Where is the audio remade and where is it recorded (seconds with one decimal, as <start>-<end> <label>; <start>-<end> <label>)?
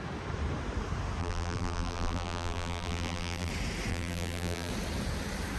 0.0-1.2 recorded; 1.2-3.5 remade; 3.5-3.9 recorded; 3.9-4.7 remade; 4.7-5.6 recorded